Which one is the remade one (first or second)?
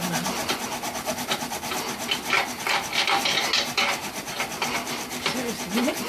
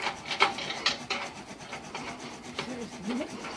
second